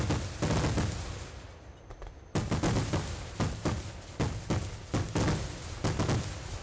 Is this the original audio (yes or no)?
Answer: yes